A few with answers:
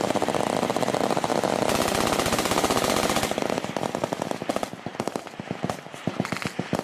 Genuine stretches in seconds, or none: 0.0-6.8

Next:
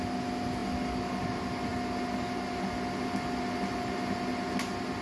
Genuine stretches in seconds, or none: 0.0-5.0

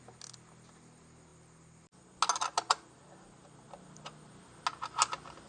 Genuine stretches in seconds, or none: 0.0-5.5